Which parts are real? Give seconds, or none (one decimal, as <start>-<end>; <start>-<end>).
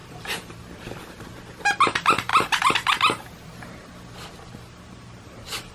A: 0.8-5.7